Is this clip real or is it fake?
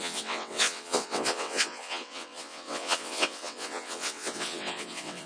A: fake